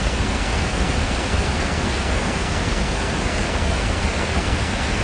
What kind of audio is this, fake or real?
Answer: fake